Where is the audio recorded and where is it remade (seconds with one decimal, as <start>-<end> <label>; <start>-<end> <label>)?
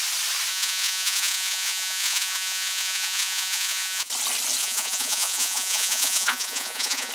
0.0-0.5 recorded; 0.5-4.1 remade; 4.1-4.6 recorded; 4.6-7.1 remade